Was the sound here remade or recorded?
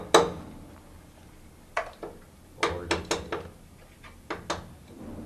recorded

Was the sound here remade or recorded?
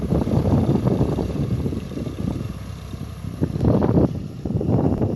remade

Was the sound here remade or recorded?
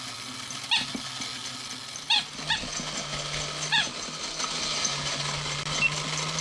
recorded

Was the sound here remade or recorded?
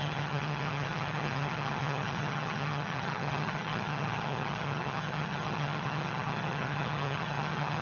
remade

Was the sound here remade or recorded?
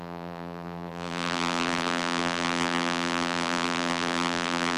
remade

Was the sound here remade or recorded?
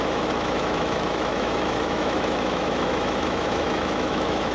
remade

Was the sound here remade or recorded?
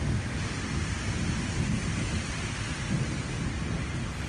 recorded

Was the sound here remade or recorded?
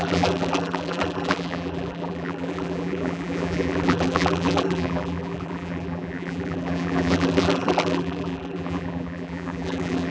remade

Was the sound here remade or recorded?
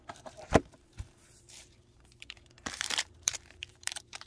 remade